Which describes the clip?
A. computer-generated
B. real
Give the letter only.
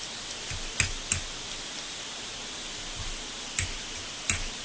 B